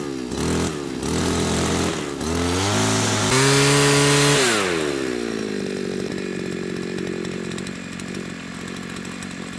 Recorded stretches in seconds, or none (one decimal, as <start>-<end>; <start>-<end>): 0.0-1.2; 1.7-9.6